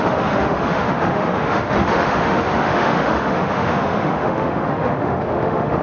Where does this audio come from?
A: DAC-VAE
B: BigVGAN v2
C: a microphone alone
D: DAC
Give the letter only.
A